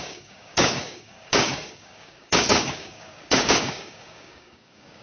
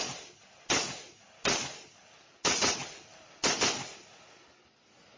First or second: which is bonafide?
second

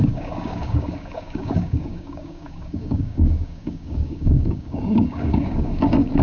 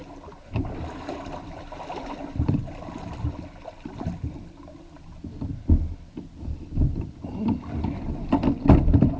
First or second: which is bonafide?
second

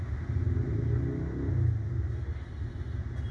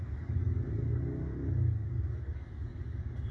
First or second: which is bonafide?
first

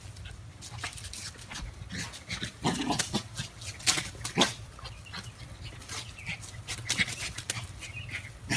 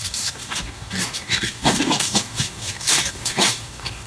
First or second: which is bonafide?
first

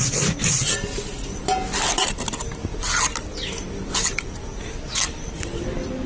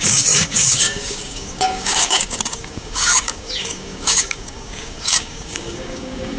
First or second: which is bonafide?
first